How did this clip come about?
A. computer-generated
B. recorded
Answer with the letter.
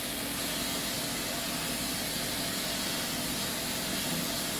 B